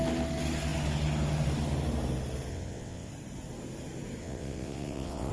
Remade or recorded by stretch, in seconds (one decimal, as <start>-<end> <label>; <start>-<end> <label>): 0.0-2.5 recorded; 2.5-3.1 remade; 3.1-4.2 recorded; 4.2-5.3 remade